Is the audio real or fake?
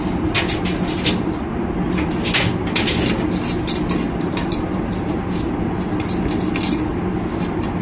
real